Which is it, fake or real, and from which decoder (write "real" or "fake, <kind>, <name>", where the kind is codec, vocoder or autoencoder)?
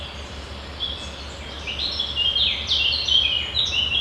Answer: real